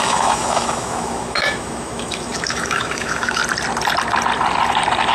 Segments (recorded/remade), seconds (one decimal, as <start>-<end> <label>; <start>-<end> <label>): 0.0-3.4 remade; 3.4-5.1 recorded